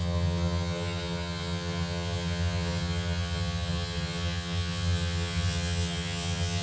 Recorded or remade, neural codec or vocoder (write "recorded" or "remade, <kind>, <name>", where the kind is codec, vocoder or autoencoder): remade, vocoder, HiFi-GAN